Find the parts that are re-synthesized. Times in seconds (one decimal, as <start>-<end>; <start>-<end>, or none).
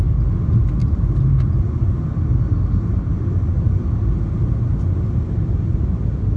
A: none